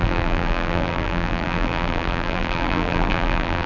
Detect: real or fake fake